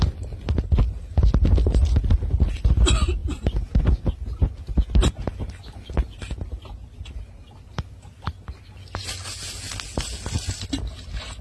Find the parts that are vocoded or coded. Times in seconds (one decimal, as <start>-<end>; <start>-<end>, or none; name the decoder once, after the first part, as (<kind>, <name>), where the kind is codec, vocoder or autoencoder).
none